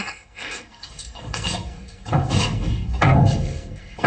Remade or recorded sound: remade